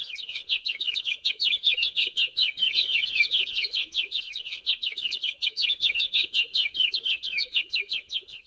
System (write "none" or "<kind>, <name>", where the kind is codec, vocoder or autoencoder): codec, SNAC